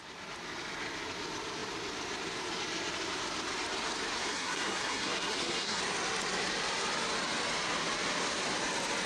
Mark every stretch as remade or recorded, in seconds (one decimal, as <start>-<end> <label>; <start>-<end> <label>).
0.0-4.3 recorded; 4.3-5.8 remade; 5.8-9.1 recorded